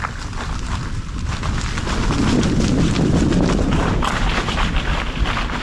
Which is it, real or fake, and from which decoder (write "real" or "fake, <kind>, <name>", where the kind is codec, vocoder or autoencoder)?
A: real